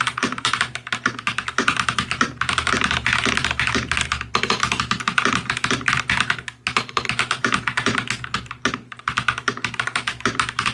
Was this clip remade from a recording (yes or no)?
yes